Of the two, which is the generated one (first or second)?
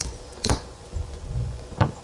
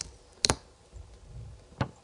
first